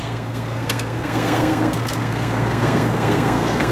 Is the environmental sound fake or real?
fake